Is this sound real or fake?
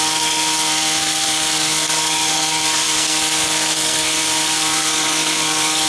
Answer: fake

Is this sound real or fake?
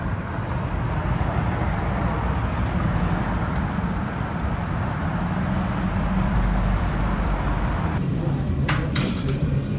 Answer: fake